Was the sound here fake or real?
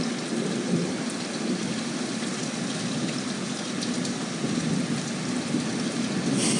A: real